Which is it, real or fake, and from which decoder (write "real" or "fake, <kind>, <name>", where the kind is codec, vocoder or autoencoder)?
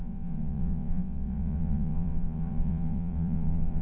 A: fake, vocoder, WaveNeXt